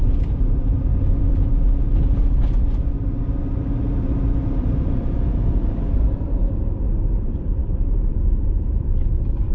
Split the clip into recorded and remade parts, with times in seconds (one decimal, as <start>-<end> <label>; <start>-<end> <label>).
0.0-0.9 remade; 0.9-3.4 recorded; 3.4-9.5 remade